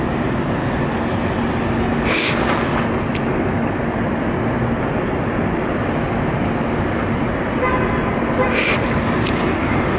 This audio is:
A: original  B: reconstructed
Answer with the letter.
A